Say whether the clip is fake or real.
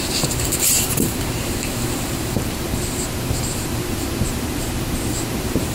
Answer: fake